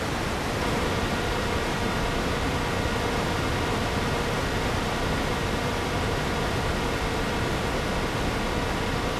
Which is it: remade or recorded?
recorded